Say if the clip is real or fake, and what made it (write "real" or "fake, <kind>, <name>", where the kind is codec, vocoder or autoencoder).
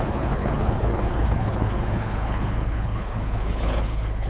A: fake, codec, HILCodec